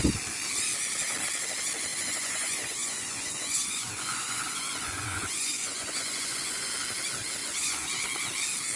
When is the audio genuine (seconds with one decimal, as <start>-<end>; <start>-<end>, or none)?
0.0-1.9; 6.7-7.4; 7.9-8.8